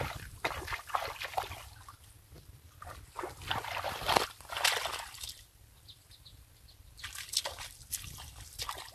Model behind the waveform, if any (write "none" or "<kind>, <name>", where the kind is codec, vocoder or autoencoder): none